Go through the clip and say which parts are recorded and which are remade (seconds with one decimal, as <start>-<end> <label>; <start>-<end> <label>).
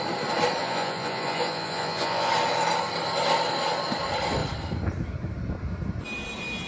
0.0-0.6 recorded; 0.6-2.3 remade; 2.3-6.7 recorded